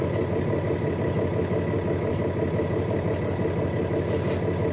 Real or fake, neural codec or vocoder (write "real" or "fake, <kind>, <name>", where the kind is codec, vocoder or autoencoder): real